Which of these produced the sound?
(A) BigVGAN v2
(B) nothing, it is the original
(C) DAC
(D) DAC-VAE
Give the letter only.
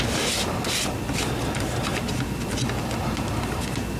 B